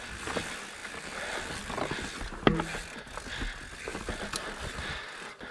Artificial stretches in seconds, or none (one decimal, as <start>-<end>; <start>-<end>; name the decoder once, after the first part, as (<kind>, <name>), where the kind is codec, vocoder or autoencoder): 0.8-2.0 (vocoder, BigVGAN v2); 3.9-5.5